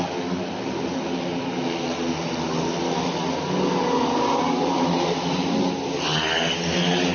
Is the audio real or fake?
real